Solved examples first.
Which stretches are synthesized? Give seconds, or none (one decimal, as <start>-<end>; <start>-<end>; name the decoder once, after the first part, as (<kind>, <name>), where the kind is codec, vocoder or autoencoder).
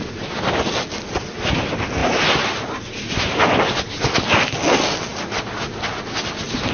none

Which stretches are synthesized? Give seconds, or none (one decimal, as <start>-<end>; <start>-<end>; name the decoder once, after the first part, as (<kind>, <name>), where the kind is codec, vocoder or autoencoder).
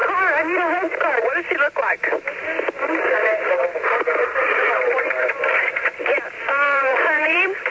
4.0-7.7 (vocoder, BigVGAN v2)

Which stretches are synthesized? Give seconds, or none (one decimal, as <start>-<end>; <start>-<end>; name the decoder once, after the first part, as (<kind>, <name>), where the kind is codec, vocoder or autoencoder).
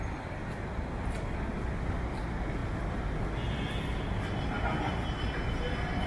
none